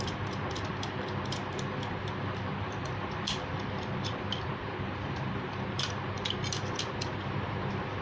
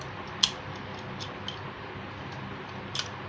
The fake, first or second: first